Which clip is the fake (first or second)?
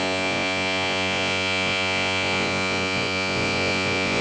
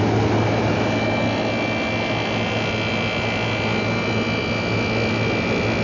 first